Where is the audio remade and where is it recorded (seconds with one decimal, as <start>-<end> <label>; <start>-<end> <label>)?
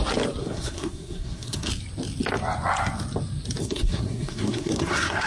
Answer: 0.0-0.4 recorded; 0.4-1.7 remade; 1.7-3.6 recorded; 3.6-5.3 remade